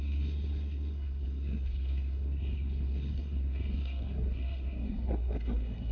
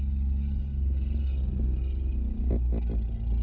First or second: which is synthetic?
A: first